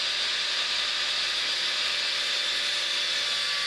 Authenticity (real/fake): real